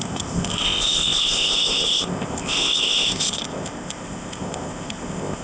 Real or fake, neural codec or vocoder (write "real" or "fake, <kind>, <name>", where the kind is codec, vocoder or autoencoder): fake, codec, ZipCodec